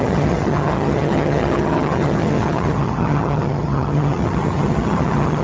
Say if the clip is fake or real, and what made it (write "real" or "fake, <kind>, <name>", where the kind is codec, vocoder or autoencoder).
fake, vocoder, HiFi-GAN